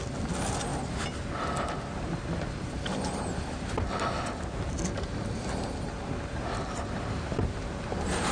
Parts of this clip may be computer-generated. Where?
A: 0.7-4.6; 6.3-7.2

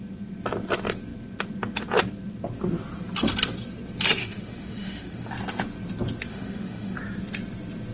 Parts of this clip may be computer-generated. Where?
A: 4.2-5.3; 6.3-7.0

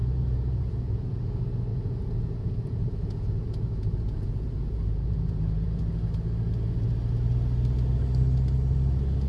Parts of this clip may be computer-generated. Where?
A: 0.0-1.2; 1.7-5.8

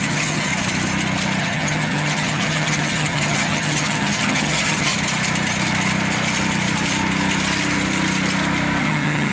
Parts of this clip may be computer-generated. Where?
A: 0.0-0.5; 1.4-4.9; 8.8-9.3